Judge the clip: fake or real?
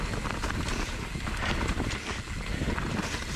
real